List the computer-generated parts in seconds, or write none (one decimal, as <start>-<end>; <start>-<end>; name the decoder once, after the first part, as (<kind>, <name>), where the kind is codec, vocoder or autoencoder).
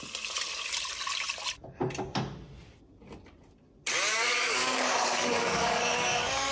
4.1-6.5 (codec, DAC)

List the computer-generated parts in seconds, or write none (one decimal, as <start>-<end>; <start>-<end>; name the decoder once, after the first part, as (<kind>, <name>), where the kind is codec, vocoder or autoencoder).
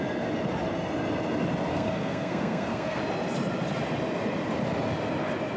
1.7-3.0 (codec, SNAC)